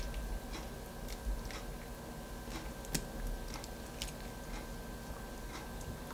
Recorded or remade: recorded